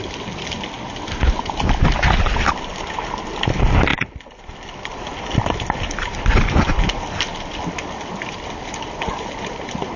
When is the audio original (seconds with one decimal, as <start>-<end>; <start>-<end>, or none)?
0.0-10.0